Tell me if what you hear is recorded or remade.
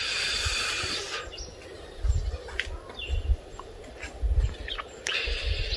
recorded